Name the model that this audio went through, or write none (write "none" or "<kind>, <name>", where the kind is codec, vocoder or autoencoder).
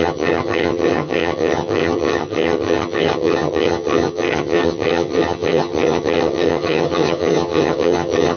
vocoder, HiFi-GAN